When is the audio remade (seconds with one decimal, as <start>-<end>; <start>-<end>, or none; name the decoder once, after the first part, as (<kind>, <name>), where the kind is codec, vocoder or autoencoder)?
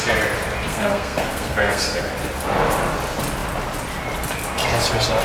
0.7-2.1 (codec, SNAC)